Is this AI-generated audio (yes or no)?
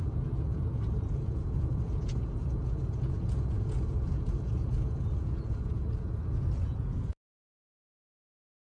yes